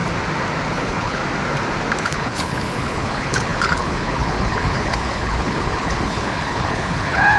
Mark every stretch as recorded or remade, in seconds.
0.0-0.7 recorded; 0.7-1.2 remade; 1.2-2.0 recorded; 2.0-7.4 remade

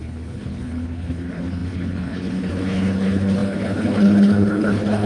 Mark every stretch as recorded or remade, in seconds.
0.0-5.1 remade

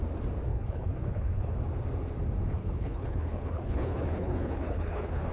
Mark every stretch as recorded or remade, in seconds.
0.0-0.5 recorded; 0.5-1.5 remade; 1.5-2.6 recorded; 2.6-5.3 remade

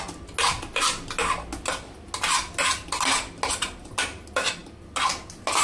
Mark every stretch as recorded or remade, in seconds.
0.0-5.6 recorded

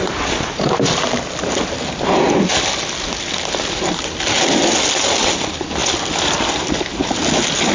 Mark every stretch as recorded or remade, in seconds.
0.0-7.7 recorded

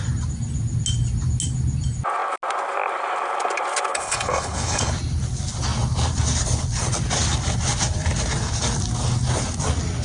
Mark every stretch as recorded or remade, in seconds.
0.0-3.9 recorded; 3.9-4.9 remade; 4.9-10.0 recorded

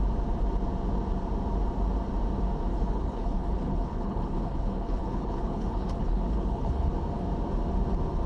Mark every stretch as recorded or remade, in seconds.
0.0-2.7 recorded; 2.7-6.9 remade; 6.9-8.3 recorded

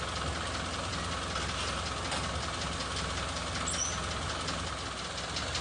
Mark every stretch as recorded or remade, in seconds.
0.0-5.6 recorded